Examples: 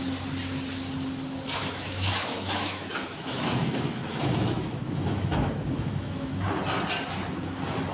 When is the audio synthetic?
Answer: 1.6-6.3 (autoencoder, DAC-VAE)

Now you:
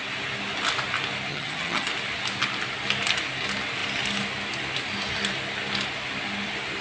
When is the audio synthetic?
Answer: 1.3-1.9 (vocoder, HiFi-GAN)

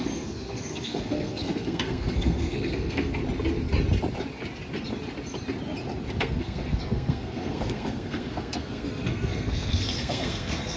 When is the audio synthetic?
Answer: 0.0-3.2 (codec, SNAC); 6.2-10.8

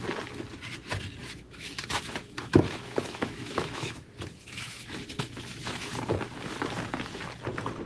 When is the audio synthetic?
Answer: 1.2-5.9 (autoencoder, DAC-VAE)

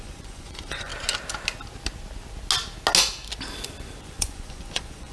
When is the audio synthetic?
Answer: 0.0-0.9 (vocoder, Vocos); 4.0-5.1